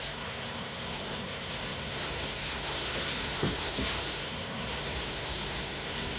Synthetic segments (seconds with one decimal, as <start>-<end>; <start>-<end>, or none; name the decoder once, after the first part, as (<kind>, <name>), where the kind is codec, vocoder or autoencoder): 0.0-6.2 (codec, SNAC)